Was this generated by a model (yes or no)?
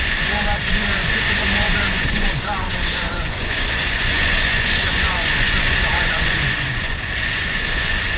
yes